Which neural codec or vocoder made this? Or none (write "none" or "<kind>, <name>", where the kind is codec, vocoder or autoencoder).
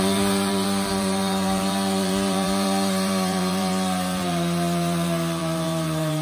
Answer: vocoder, BigVGAN v2